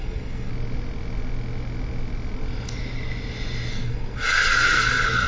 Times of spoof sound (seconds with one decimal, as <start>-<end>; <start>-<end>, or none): 0.0-0.5; 3.7-5.3